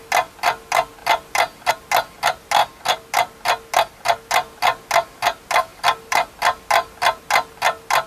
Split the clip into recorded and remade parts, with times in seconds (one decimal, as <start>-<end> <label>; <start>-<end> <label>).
0.0-5.7 recorded; 5.7-6.4 remade; 6.4-8.1 recorded